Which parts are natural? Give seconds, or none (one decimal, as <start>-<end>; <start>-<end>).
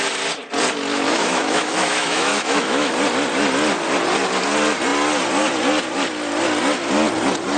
0.0-0.9; 2.9-7.6